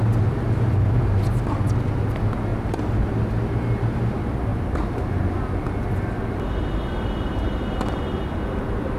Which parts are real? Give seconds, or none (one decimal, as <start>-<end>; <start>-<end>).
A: 1.3-9.0

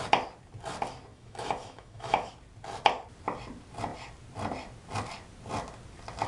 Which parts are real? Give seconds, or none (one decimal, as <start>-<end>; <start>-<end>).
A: 0.0-1.1; 2.3-6.3

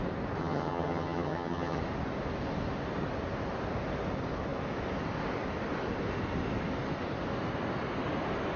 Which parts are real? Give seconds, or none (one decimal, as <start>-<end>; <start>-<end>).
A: 0.0-0.4; 1.8-8.6

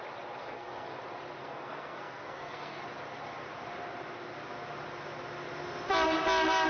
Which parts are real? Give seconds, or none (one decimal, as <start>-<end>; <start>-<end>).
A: 0.0-0.4; 1.0-1.4; 2.8-6.7

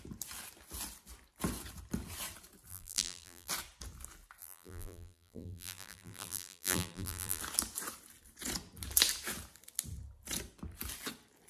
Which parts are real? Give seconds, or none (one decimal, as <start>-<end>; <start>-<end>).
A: 0.0-2.7; 3.5-4.4; 7.4-11.5